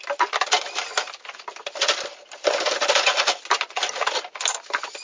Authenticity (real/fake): real